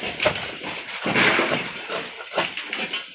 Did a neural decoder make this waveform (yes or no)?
yes